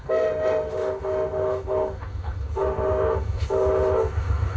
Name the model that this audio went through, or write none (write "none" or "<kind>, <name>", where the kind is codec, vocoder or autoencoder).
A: autoencoder, DAC-VAE